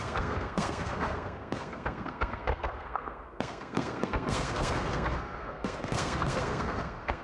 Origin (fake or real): fake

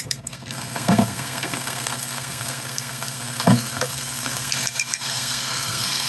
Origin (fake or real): fake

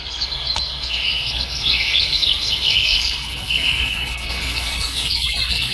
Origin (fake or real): fake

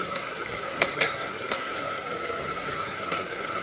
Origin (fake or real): fake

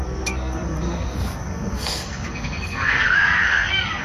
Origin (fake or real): fake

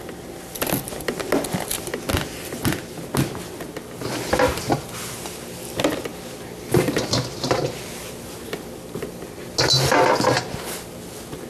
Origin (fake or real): real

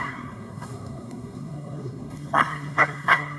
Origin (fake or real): fake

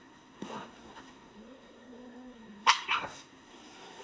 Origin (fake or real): fake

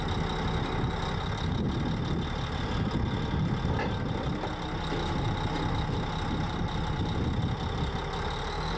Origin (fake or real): real